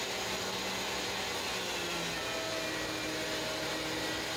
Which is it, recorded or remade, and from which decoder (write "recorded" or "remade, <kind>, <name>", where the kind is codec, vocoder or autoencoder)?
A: recorded